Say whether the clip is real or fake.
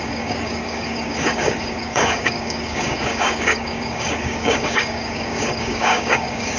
fake